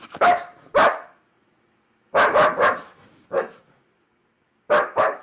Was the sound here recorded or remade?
remade